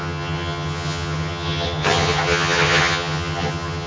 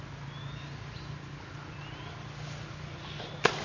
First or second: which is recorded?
second